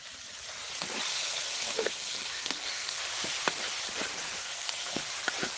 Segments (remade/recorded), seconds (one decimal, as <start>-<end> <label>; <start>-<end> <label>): 0.0-1.1 recorded; 1.1-3.0 remade; 3.0-4.4 recorded; 4.4-5.0 remade; 5.0-5.6 recorded